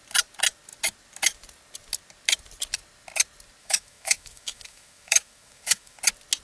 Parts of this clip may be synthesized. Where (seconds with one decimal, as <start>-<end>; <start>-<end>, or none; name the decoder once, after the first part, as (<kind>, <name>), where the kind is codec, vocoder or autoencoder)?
3.6-6.0 (autoencoder, DAC-VAE)